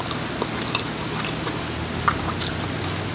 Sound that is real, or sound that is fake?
real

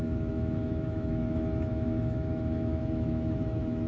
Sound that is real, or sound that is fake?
fake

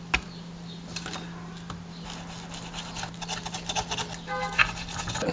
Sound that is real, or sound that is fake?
real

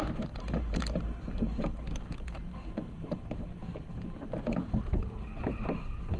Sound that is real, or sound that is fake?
fake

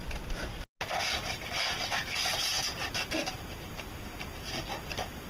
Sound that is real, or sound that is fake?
real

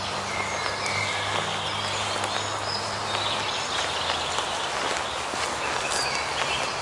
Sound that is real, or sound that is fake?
real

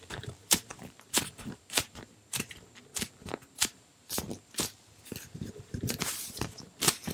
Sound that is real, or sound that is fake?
fake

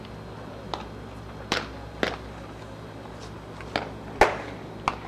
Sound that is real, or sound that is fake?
real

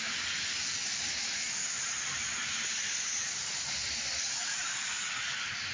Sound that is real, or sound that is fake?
real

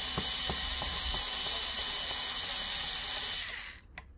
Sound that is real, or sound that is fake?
real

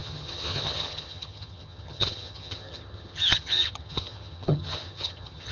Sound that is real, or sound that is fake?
fake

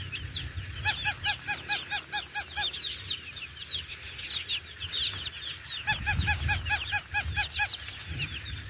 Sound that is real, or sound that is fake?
real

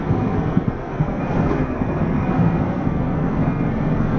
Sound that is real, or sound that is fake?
fake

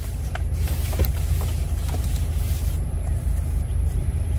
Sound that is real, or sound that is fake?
fake